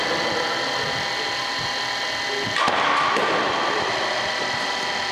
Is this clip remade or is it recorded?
recorded